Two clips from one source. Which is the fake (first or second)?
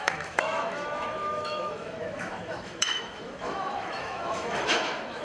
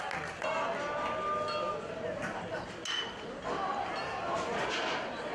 first